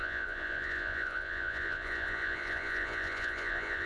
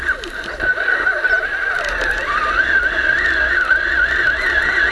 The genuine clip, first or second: second